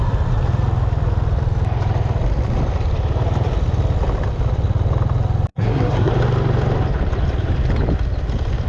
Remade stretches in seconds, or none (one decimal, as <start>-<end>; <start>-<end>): 5.5-6.1